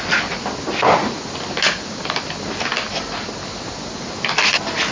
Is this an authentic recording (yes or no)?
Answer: yes